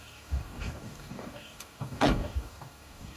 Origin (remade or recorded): remade